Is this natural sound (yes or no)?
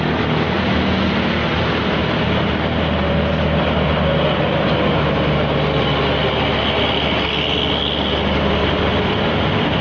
yes